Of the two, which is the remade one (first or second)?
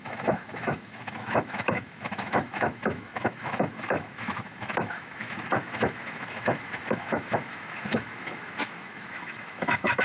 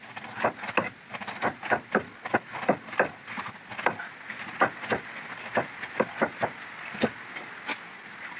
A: first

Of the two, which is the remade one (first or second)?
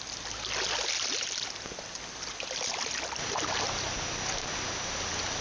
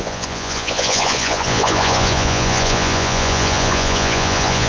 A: second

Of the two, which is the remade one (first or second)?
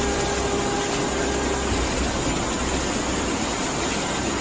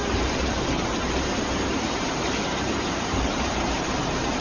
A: second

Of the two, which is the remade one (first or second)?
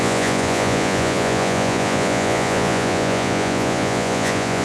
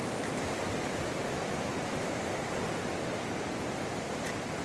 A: first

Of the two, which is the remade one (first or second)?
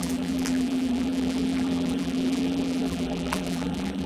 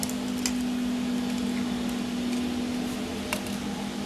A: first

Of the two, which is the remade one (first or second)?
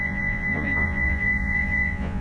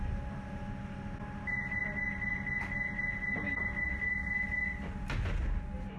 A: first